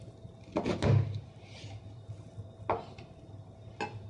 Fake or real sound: real